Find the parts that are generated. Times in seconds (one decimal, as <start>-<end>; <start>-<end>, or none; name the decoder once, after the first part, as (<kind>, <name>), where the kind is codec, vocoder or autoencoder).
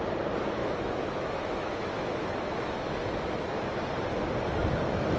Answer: 0.6-3.7 (autoencoder, DAC-VAE)